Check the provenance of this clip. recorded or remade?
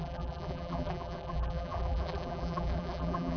remade